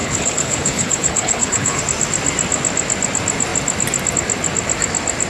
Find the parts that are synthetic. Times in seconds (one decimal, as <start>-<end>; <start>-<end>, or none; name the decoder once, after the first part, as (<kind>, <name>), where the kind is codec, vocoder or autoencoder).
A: 0.0-1.8 (codec, HILCodec)

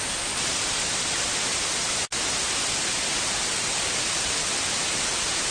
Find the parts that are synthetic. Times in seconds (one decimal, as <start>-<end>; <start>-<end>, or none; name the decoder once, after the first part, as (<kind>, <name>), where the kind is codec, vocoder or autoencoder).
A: none